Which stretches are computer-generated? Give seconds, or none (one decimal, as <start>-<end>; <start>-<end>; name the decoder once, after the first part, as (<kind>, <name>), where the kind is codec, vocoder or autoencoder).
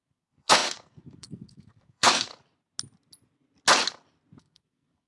0.0-2.3 (codec, SNAC); 4.4-5.1